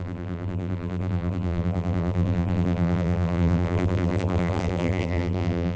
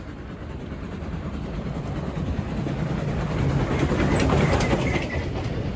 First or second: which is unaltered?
second